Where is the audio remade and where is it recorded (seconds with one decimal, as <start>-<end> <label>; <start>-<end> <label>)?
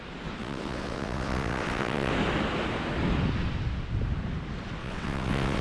0.0-0.4 recorded; 0.4-2.1 remade; 2.1-4.8 recorded; 4.8-5.6 remade